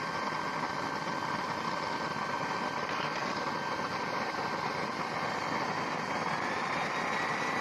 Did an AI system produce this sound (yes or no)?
no